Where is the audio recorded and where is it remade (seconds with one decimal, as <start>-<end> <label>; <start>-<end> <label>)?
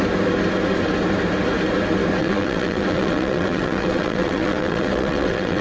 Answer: 0.0-2.2 recorded; 2.2-5.6 remade